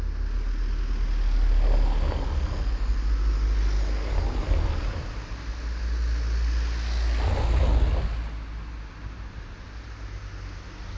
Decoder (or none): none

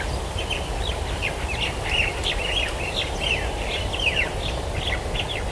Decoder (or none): none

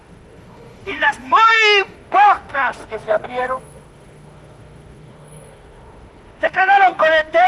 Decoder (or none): autoencoder, DAC-VAE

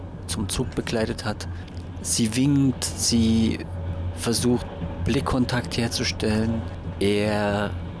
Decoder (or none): none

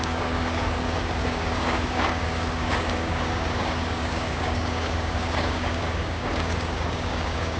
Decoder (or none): codec, DAC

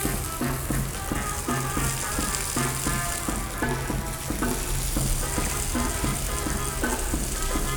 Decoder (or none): none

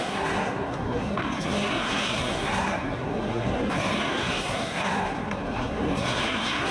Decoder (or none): codec, SNAC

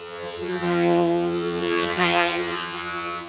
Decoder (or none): vocoder, HiFi-GAN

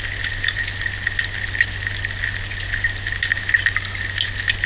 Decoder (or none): none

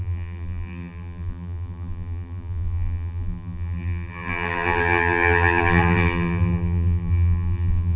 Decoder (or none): vocoder, BigVGAN v2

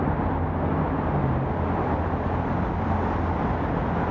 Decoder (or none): none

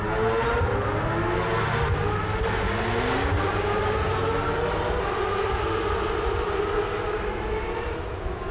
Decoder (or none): none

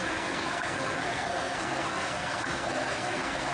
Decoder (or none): codec, SNAC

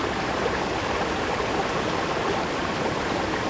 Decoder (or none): none